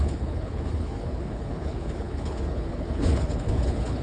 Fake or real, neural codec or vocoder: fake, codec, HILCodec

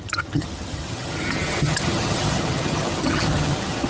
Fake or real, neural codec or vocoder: fake, vocoder, HiFi-GAN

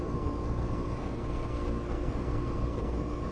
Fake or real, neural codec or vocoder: fake, codec, SNAC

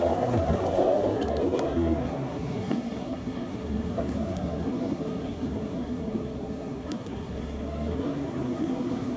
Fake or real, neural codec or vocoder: fake, codec, SNAC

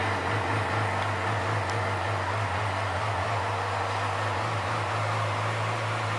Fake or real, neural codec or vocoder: real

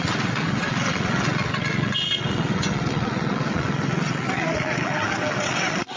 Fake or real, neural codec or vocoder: fake, vocoder, WaveNeXt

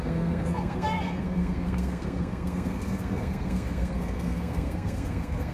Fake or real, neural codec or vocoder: fake, codec, SNAC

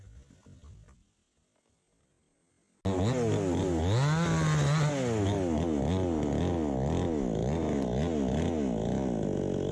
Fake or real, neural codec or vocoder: real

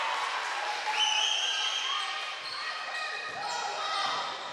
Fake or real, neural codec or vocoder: real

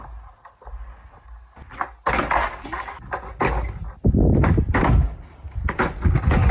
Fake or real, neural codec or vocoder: real